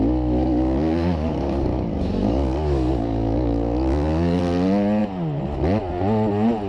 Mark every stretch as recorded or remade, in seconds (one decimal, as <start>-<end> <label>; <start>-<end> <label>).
0.0-0.4 recorded; 0.4-4.4 remade; 4.4-6.7 recorded